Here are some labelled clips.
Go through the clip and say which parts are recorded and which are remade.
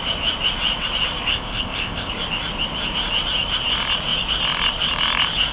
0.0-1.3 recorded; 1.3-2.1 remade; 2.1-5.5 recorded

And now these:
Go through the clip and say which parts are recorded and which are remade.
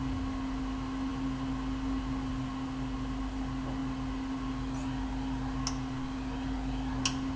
0.0-7.4 recorded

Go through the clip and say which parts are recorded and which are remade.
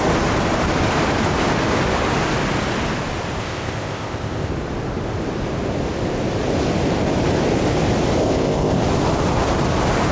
0.0-3.4 recorded; 3.4-4.5 remade; 4.5-8.2 recorded; 8.2-8.8 remade; 8.8-10.1 recorded